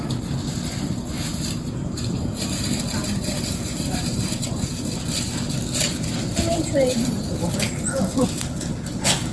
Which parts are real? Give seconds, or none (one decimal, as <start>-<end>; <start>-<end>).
0.0-1.1; 2.2-3.0; 5.0-6.5; 7.3-9.3